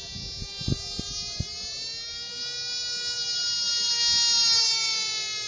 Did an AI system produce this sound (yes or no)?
no